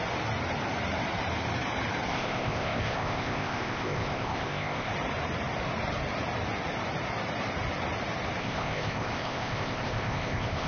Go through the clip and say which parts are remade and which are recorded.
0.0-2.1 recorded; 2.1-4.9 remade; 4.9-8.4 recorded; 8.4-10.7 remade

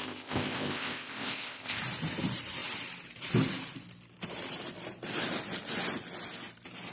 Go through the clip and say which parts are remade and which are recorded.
0.0-1.8 remade; 1.8-6.9 recorded

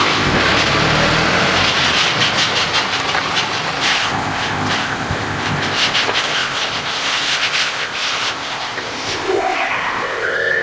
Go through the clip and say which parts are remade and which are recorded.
0.0-0.4 remade; 0.4-3.8 recorded; 3.8-10.6 remade

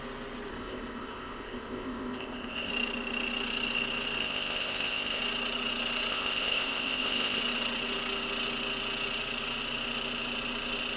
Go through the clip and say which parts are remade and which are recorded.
0.0-0.5 recorded; 0.5-2.7 remade; 2.7-4.2 recorded; 4.2-5.2 remade; 5.2-6.1 recorded; 6.1-7.4 remade; 7.4-11.0 recorded